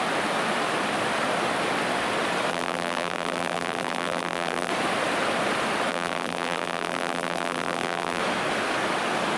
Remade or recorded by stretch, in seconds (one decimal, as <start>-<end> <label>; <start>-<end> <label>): 0.0-2.5 recorded; 2.5-4.7 remade; 4.7-5.9 recorded; 5.9-8.2 remade; 8.2-9.4 recorded